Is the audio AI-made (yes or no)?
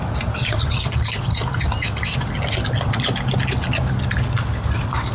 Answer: no